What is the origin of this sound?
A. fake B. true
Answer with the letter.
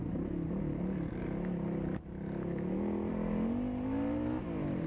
B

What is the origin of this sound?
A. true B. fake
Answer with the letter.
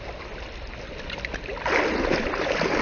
A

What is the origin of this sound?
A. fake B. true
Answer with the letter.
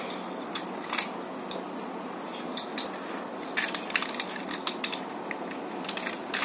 B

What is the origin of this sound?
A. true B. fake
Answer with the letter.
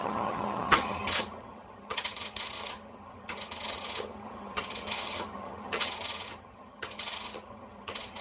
B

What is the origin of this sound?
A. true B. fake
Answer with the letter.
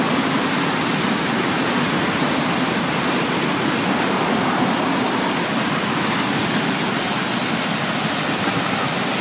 A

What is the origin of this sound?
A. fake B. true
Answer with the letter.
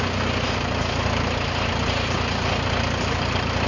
B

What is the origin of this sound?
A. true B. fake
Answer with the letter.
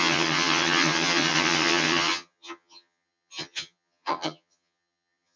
B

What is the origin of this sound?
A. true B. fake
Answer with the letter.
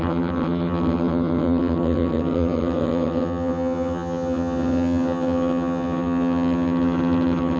B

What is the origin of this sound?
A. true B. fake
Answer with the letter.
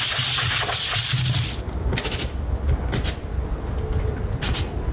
A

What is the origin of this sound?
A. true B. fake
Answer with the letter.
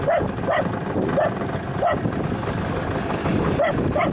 A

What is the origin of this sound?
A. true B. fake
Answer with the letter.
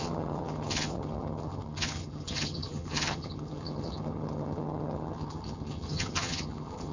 B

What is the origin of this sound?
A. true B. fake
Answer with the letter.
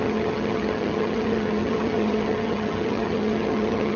B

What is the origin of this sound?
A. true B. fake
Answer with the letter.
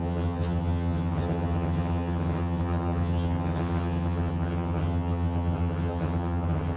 B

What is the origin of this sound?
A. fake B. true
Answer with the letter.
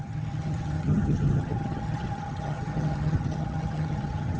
A